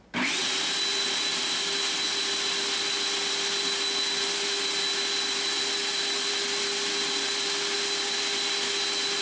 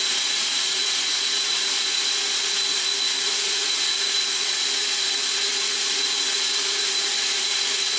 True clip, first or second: first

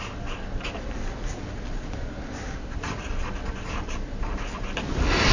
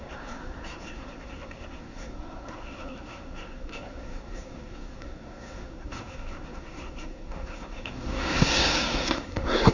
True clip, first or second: first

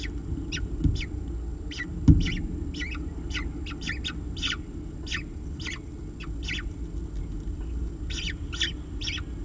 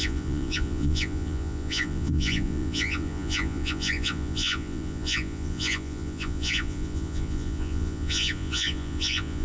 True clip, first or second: first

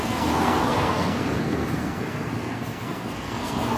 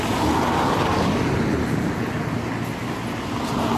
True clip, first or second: second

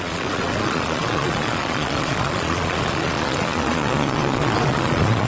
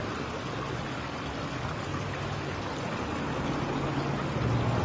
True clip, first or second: second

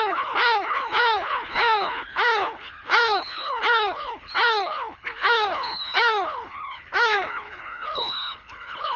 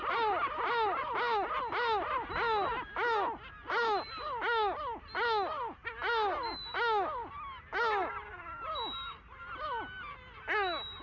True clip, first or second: second